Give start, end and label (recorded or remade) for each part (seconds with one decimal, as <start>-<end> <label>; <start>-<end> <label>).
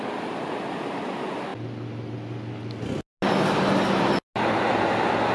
0.0-5.3 recorded